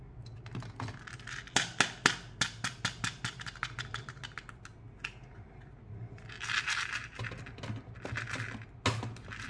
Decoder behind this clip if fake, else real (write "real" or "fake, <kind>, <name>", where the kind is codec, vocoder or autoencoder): real